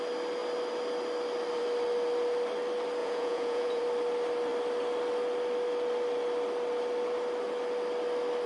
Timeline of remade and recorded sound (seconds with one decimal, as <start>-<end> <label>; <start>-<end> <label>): 0.0-3.0 recorded; 3.0-3.8 remade; 3.8-8.5 recorded